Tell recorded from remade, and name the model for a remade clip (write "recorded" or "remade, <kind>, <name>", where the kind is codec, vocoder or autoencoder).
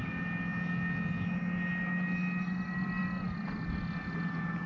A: recorded